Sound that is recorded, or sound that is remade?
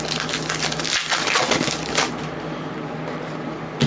recorded